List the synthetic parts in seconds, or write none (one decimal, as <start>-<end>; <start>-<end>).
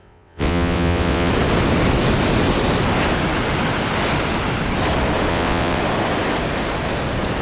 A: 0.0-1.3; 5.3-5.8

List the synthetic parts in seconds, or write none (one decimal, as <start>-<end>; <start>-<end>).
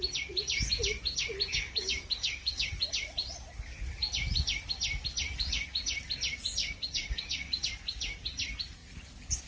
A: 1.5-2.8; 6.6-7.6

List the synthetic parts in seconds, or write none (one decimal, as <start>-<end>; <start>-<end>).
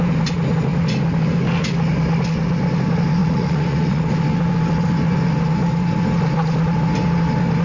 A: 3.2-4.0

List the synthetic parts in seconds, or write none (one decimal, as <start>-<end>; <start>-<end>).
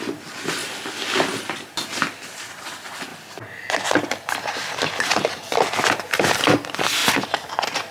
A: 0.0-0.6; 2.5-3.1; 4.2-7.9